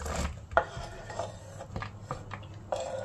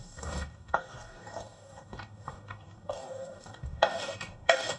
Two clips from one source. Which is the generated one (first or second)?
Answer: second